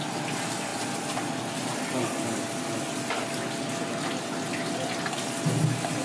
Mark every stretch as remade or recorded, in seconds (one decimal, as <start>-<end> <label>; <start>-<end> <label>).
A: 0.0-6.0 recorded